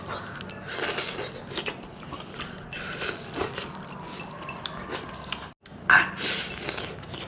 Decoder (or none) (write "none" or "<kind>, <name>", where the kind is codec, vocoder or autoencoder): none